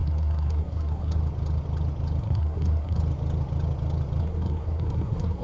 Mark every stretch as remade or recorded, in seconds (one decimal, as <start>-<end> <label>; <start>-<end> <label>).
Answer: 0.0-1.2 remade; 1.2-2.2 recorded; 2.2-3.0 remade; 3.0-4.2 recorded; 4.2-5.4 remade